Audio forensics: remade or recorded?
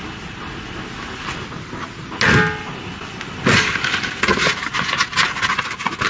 recorded